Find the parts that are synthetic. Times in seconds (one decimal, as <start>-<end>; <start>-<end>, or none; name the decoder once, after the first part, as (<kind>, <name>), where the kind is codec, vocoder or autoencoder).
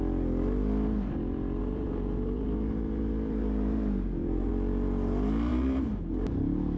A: 1.6-4.5 (vocoder, BigVGAN v2); 5.5-6.8